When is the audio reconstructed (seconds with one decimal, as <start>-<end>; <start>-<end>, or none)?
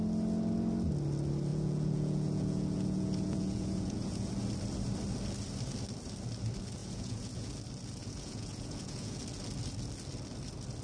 1.5-4.3; 6.8-7.5; 8.0-9.2